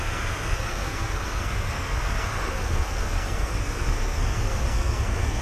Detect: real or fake fake